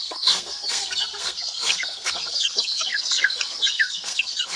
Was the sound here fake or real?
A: fake